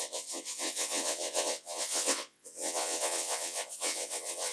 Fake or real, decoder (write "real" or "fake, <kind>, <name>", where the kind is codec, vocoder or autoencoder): fake, vocoder, WaveNeXt